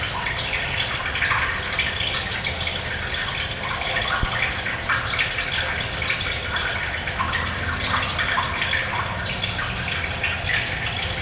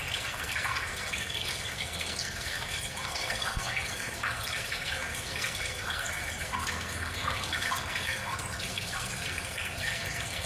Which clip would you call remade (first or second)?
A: second